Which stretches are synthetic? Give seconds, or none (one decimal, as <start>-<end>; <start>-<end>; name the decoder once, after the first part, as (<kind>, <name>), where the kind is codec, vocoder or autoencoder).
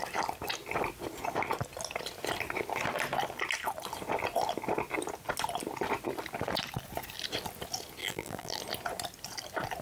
8.0-8.6 (vocoder, BigVGAN v2)